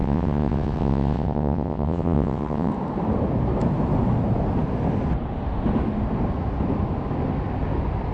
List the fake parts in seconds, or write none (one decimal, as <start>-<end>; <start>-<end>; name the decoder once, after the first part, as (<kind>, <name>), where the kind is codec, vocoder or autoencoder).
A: 0.0-2.7 (vocoder, WaveNeXt)